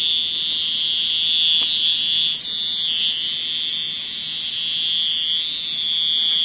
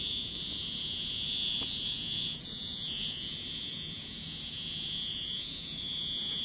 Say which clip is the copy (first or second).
second